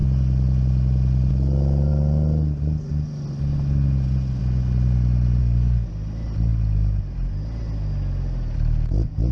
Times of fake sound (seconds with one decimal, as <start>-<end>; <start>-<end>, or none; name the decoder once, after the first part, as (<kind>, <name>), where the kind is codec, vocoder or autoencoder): 5.4-5.9 (codec, SNAC)